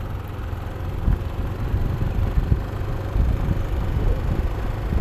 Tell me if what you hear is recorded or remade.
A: recorded